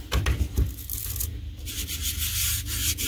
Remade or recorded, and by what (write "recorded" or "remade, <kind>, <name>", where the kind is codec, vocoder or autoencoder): recorded